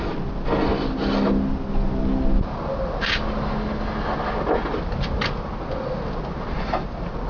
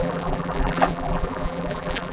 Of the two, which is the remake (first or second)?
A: second